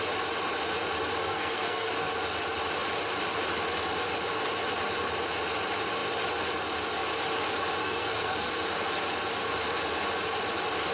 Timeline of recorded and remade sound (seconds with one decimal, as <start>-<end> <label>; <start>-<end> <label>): 0.0-1.2 recorded; 1.2-2.1 remade; 2.1-7.8 recorded; 7.8-8.5 remade; 8.5-10.9 recorded